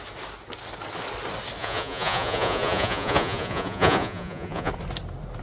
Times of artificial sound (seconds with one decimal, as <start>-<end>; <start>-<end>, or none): 1.6-4.7